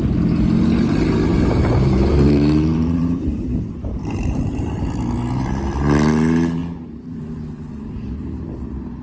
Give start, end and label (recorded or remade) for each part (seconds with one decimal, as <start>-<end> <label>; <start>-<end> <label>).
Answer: 0.0-1.3 recorded; 1.3-4.8 remade; 4.8-9.0 recorded